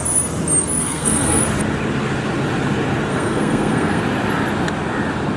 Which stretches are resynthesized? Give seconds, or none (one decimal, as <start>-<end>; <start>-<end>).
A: 0.8-1.4; 3.1-4.0